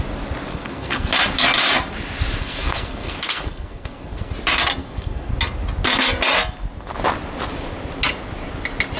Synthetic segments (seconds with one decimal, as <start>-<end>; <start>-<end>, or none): 0.5-1.1; 2.4-4.3; 4.8-5.3